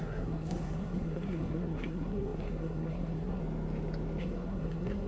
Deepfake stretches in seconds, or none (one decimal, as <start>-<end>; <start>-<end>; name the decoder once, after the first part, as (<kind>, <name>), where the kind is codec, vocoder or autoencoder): 0.0-3.4 (codec, SNAC); 4.2-5.1